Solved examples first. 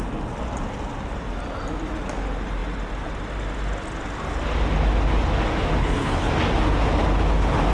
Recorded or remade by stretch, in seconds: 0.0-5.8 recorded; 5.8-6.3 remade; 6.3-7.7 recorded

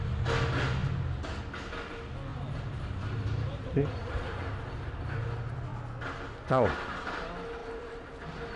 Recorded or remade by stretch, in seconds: 0.0-2.3 recorded; 2.3-5.2 remade; 5.2-7.6 recorded; 7.6-8.1 remade; 8.1-8.6 recorded

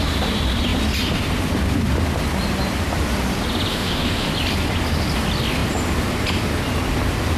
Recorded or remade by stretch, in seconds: 0.0-3.7 recorded; 3.7-4.3 remade; 4.3-7.4 recorded

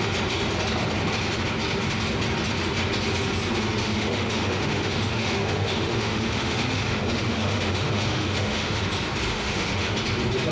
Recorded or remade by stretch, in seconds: 0.0-3.8 recorded; 3.8-8.8 remade; 8.8-9.3 recorded; 9.3-9.9 remade; 9.9-10.5 recorded

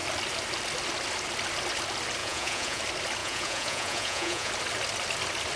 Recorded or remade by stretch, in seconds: 0.0-2.2 recorded; 2.2-2.8 remade; 2.8-3.2 recorded; 3.2-4.5 remade; 4.5-5.6 recorded

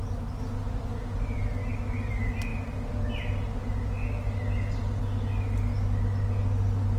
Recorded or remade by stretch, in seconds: 0.0-7.0 recorded